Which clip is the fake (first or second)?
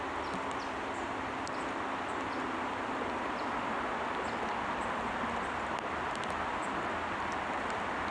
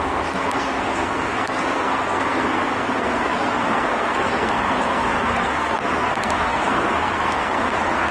second